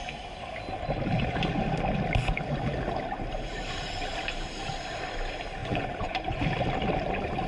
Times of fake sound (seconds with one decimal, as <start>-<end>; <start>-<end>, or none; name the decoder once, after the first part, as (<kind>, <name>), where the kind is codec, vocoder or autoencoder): 5.6-6.4 (vocoder, Vocos)